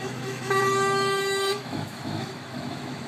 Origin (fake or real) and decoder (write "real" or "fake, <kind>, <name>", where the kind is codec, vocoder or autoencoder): fake, autoencoder, DAC-VAE